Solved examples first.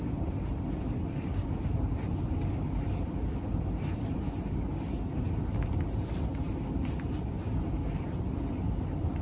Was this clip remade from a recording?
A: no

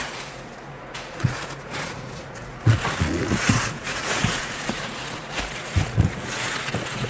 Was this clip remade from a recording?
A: yes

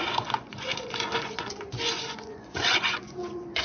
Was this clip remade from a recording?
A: yes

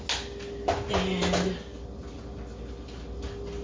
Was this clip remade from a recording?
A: no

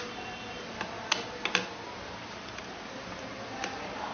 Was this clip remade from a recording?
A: no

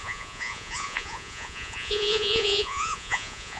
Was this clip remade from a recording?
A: yes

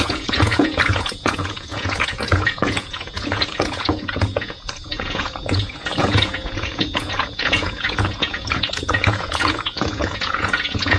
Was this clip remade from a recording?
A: yes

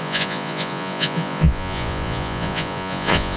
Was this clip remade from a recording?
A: yes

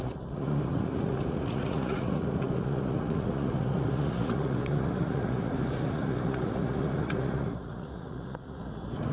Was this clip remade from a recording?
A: yes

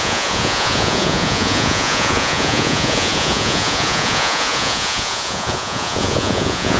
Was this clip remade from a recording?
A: yes